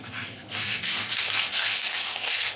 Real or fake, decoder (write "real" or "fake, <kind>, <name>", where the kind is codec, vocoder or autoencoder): fake, codec, SNAC